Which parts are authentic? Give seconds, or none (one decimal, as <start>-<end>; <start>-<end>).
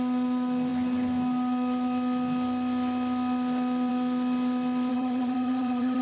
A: 0.0-4.9